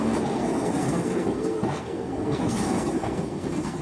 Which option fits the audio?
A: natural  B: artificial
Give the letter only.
B